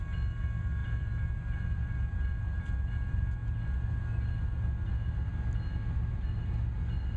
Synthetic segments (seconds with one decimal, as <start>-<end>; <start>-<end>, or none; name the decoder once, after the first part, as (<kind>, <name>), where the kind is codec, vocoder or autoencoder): 0.8-2.9 (vocoder, BigVGAN v2)